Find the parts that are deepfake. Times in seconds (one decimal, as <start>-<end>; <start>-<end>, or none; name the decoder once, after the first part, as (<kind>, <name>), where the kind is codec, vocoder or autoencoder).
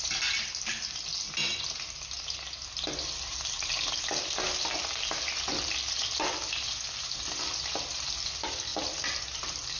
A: none